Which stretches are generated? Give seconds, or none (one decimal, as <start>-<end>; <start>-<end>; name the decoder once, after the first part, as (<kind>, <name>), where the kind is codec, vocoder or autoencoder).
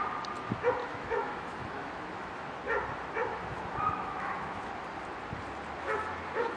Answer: 0.8-2.5 (autoencoder, DAC-VAE); 3.3-4.8